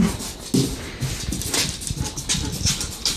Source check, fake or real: real